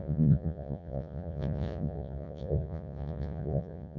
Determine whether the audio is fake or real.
fake